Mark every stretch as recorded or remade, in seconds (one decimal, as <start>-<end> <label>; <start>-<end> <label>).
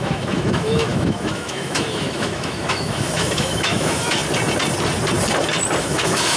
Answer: 0.0-4.2 remade; 4.2-5.8 recorded; 5.8-6.4 remade